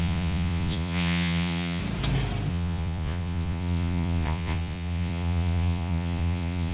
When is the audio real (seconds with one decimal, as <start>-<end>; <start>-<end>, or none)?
1.8-2.5